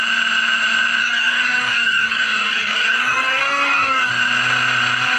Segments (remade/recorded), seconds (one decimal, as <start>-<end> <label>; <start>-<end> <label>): 0.0-1.0 recorded; 1.0-4.1 remade; 4.1-5.2 recorded